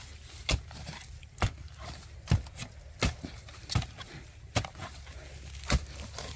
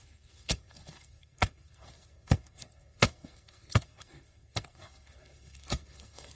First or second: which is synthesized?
second